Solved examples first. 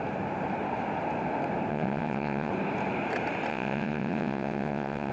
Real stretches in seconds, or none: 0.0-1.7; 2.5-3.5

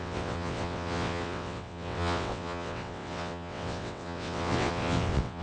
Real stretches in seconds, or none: none

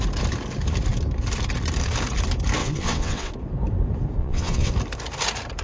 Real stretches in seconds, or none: 0.0-2.6; 3.3-4.2; 4.7-5.6

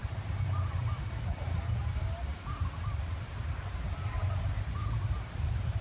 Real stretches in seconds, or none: 0.0-5.8

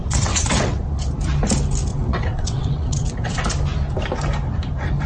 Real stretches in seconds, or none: 0.8-1.9; 3.4-5.1